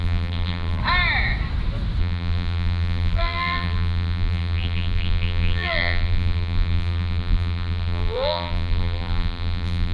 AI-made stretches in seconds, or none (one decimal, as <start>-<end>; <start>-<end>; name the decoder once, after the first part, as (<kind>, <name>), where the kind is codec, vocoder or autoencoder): 0.0-0.8 (vocoder, BigVGAN v2); 2.0-9.9